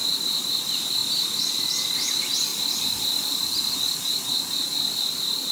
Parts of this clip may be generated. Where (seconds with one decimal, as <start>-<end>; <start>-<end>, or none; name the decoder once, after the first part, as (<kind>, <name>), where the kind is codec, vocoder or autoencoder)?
none